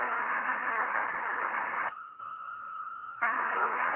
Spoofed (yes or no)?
yes